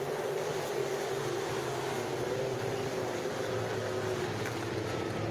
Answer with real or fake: real